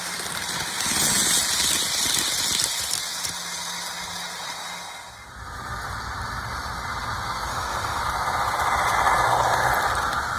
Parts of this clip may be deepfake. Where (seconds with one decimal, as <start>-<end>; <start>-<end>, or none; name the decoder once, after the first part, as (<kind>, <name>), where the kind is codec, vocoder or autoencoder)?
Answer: 7.5-8.0 (autoencoder, DAC-VAE)